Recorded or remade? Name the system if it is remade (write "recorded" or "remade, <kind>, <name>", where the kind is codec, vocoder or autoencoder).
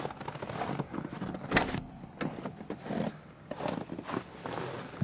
recorded